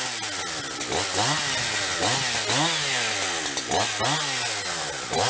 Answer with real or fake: real